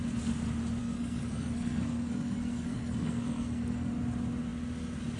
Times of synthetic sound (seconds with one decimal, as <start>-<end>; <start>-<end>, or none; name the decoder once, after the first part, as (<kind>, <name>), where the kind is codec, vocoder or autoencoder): 0.8-3.9 (codec, SNAC)